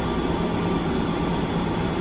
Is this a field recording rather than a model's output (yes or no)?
yes